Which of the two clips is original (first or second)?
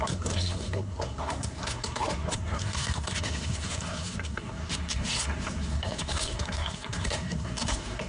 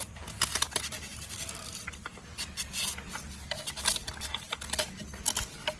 second